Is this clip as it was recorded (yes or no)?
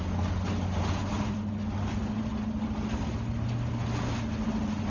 yes